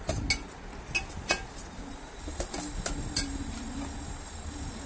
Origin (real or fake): real